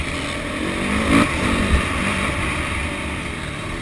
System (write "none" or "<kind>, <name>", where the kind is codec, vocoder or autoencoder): none